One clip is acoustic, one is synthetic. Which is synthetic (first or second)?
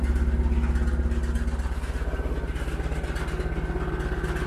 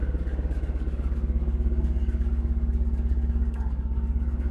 second